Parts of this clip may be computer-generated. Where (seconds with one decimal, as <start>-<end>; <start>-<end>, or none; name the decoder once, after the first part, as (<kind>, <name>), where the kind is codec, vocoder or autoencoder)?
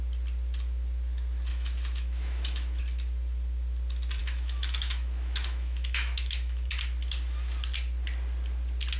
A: 1.5-2.8 (autoencoder, DAC-VAE); 4.2-6.7